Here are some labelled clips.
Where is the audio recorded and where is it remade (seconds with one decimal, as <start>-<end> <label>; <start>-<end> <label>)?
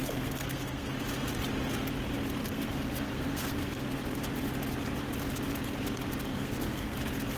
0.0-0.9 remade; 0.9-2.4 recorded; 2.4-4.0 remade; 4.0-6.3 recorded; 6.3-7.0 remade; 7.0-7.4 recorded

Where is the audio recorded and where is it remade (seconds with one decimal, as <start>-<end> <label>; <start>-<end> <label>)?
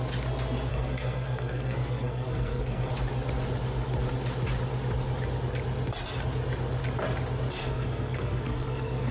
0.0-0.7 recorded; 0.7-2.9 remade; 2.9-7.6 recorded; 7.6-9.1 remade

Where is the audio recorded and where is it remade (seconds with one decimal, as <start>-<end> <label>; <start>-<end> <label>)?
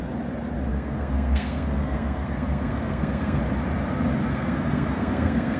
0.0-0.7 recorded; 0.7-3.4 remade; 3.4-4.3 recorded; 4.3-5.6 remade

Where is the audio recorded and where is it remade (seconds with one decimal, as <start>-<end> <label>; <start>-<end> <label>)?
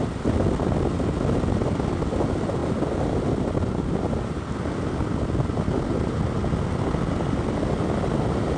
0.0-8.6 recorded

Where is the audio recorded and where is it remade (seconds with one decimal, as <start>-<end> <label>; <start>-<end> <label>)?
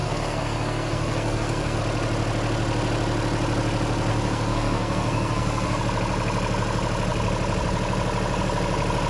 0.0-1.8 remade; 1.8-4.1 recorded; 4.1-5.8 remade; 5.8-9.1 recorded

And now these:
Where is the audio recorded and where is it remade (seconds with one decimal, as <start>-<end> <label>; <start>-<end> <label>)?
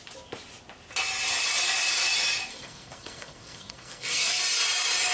0.0-2.5 recorded; 2.5-4.4 remade; 4.4-5.1 recorded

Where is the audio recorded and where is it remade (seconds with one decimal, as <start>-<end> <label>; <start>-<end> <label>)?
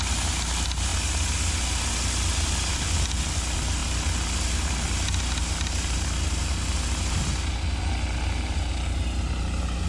0.0-9.9 recorded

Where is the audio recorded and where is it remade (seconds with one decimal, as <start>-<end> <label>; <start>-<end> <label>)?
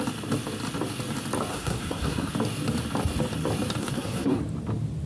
0.0-1.5 recorded; 1.5-2.3 remade; 2.3-3.8 recorded; 3.8-4.4 remade; 4.4-5.1 recorded